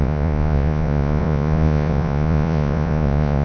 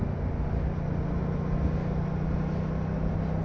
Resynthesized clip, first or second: first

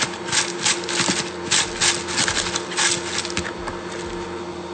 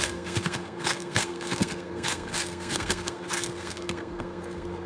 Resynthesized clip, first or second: second